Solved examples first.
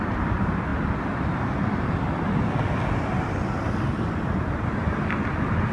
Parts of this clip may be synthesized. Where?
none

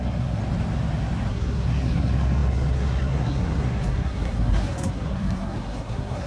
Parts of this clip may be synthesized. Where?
0.0-0.4 (codec, SNAC); 1.3-6.3

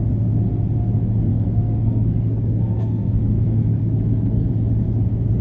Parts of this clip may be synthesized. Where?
1.3-4.5 (codec, SNAC)

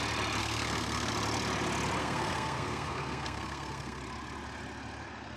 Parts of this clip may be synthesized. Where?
0.4-1.1 (codec, SNAC); 2.0-4.0